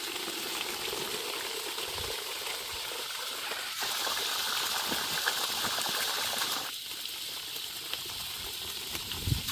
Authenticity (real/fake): real